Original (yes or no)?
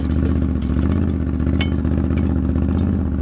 yes